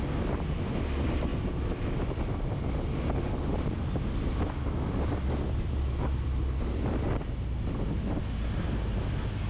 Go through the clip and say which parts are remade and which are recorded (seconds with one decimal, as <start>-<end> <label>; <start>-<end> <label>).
0.0-9.5 recorded